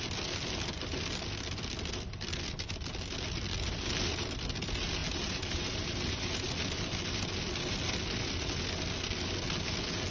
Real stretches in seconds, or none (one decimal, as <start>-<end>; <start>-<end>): 0.0-5.0; 6.2-10.1